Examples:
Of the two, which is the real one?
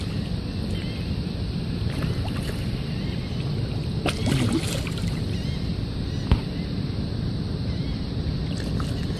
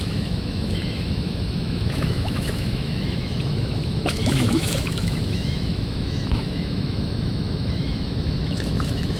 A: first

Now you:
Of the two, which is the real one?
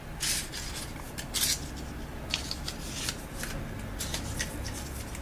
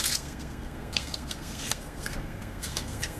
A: first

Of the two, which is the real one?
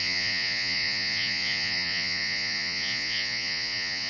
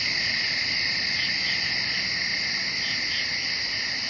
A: second